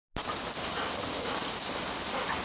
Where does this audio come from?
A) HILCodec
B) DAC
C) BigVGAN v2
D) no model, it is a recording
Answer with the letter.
D